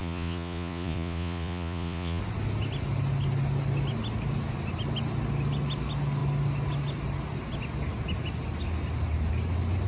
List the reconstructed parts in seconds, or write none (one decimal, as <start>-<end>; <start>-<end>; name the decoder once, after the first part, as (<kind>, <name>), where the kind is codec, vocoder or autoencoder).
0.0-2.2 (vocoder, Vocos)